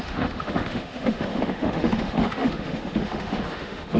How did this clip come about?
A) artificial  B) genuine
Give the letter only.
A